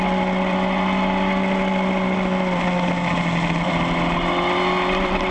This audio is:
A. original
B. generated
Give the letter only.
A